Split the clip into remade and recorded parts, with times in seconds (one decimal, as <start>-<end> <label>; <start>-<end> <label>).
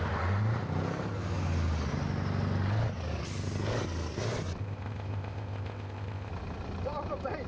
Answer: 0.0-4.6 recorded; 4.6-6.3 remade; 6.3-7.5 recorded